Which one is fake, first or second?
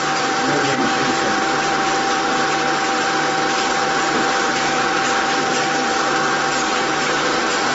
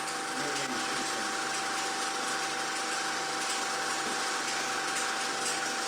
first